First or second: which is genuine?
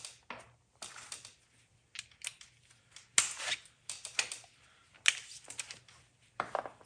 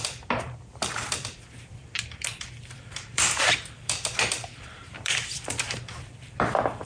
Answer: first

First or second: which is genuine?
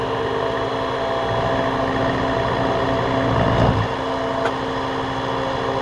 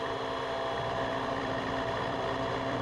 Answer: first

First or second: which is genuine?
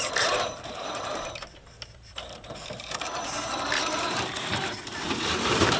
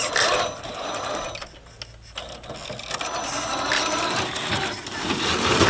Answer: second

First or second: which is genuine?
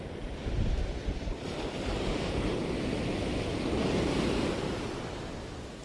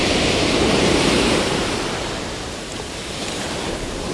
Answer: first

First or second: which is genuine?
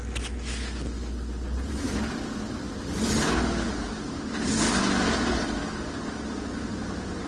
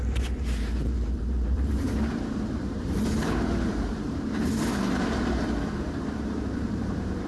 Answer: first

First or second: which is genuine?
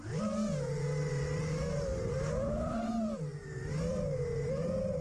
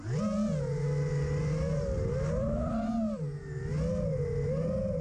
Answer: second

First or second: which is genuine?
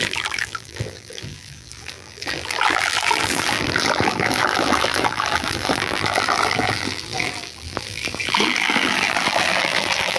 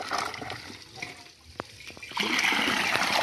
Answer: second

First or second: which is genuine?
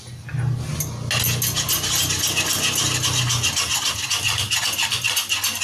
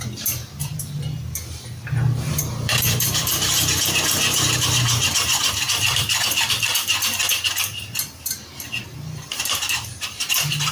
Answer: first